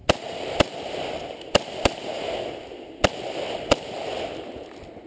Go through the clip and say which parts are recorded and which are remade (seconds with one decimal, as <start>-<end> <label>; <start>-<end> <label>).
0.0-5.1 recorded